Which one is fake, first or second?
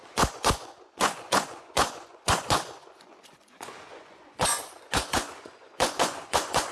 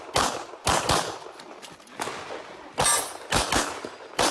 first